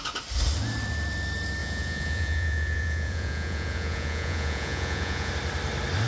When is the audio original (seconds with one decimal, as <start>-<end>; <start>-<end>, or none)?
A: 0.0-1.6; 5.3-6.1